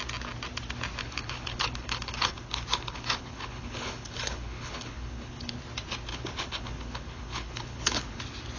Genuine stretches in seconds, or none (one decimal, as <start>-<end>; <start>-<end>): 0.0-1.0; 5.6-6.1; 8.2-8.6